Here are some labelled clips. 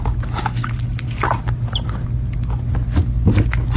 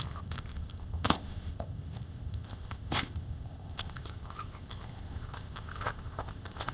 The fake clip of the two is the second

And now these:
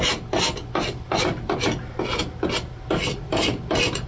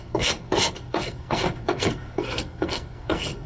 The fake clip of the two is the second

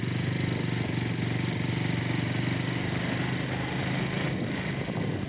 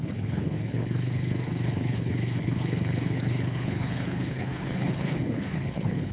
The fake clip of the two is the second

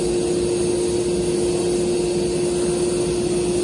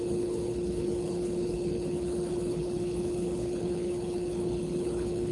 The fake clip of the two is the second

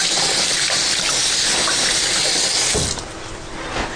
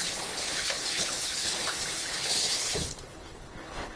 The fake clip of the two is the second